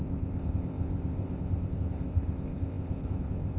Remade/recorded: remade